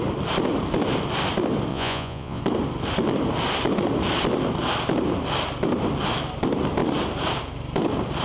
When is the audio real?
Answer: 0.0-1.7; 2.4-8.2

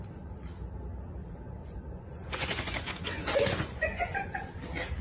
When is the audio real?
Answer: 0.0-1.6; 4.6-5.0

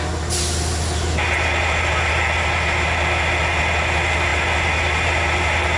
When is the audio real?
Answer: 0.0-5.8

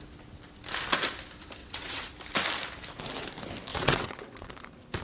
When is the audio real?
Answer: 0.0-1.6; 2.1-3.7; 4.5-5.0